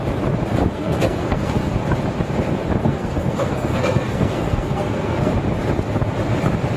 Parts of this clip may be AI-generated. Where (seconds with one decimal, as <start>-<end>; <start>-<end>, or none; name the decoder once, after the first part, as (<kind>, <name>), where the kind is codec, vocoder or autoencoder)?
0.5-1.7 (codec, SNAC); 2.8-5.3